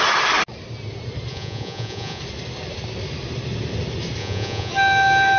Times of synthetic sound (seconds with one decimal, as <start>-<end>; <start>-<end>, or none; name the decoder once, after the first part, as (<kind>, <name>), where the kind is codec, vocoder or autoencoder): 1.3-2.2 (vocoder, Vocos); 4.2-4.7